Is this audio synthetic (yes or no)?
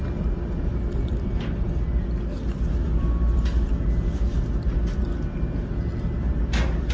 no